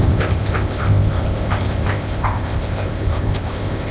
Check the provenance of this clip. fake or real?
fake